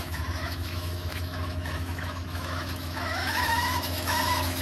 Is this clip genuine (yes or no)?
no